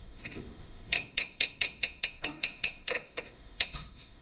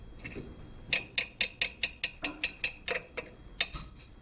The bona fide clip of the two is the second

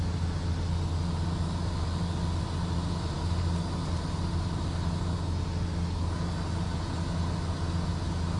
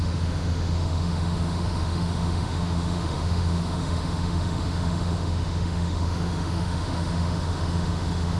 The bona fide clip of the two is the first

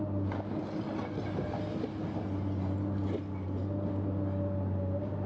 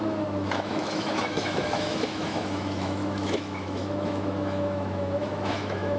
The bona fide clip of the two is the first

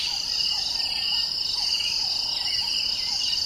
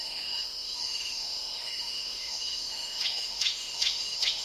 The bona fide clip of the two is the first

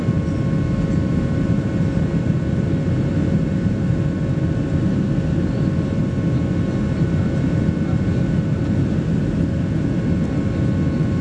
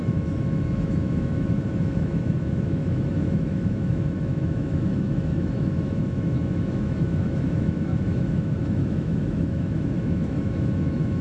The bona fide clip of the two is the first